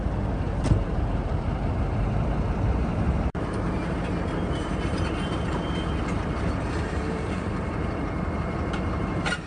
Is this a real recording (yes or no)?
no